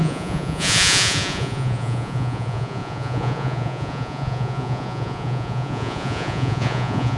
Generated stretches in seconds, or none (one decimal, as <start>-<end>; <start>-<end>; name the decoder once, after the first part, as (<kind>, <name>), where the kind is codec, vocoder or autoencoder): 0.0-7.2 (vocoder, Vocos)